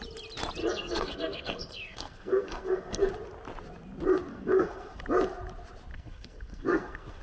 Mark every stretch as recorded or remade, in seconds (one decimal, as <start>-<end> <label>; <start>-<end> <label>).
0.0-0.6 recorded; 0.6-3.1 remade; 3.1-4.3 recorded; 4.3-5.0 remade; 5.0-5.9 recorded; 5.9-7.2 remade